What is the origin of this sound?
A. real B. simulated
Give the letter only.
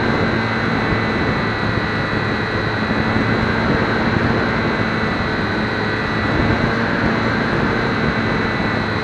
A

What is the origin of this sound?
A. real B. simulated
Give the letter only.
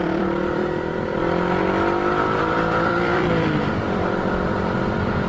B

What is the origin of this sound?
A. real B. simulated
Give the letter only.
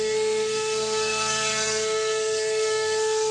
B